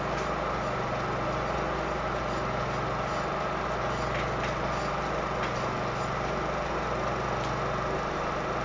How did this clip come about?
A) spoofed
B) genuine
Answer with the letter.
B